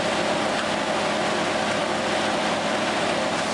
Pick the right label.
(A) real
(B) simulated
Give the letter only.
A